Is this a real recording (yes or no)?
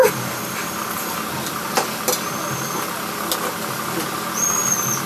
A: yes